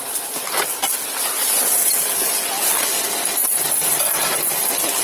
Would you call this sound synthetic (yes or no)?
no